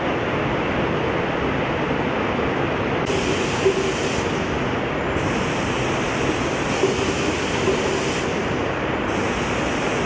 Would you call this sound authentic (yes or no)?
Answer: yes